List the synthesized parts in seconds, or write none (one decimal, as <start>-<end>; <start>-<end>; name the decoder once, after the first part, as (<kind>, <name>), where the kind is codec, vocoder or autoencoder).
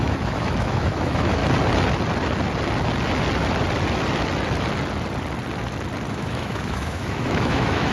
0.0-1.4 (autoencoder, DAC-VAE); 6.1-7.9